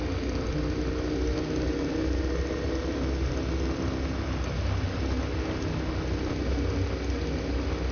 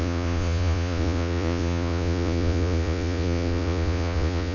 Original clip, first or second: first